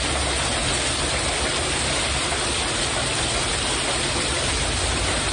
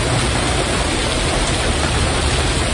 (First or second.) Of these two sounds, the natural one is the first